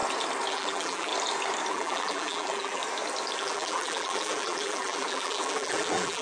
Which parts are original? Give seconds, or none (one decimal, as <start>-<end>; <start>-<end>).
0.0-0.5; 1.1-1.7; 2.8-3.4

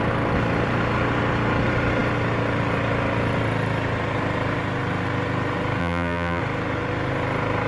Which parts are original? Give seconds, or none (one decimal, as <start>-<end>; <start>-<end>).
0.0-5.8; 6.4-7.7